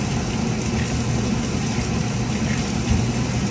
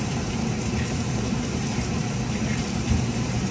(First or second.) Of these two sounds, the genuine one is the first